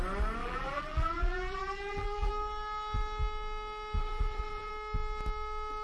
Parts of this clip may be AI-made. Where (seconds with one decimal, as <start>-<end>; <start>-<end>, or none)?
0.4-2.3; 4.0-4.7